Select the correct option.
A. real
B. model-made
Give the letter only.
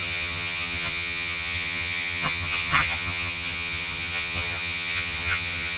B